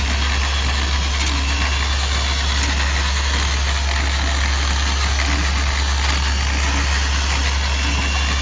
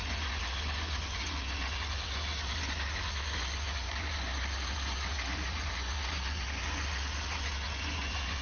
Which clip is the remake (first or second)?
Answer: second